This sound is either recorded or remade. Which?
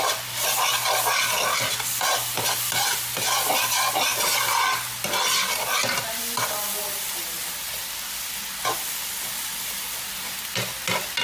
recorded